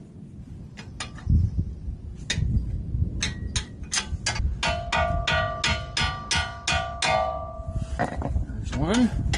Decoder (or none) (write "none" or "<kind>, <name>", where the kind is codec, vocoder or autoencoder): none